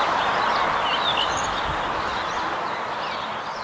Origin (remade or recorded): recorded